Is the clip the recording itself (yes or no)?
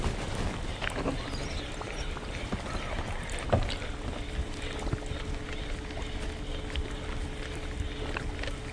yes